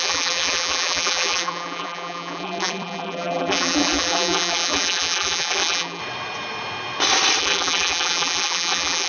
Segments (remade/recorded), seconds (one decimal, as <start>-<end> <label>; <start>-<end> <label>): 0.0-6.0 remade; 6.0-7.4 recorded; 7.4-9.1 remade